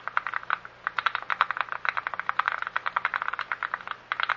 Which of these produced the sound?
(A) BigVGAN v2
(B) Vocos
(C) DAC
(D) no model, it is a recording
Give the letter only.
D